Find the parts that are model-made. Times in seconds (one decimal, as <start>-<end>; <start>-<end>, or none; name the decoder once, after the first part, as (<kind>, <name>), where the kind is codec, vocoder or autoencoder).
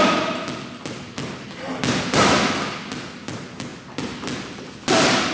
none